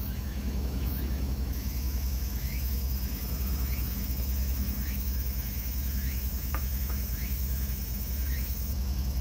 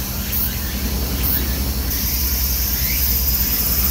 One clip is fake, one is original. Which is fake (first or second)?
first